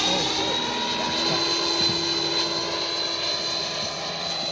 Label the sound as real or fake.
real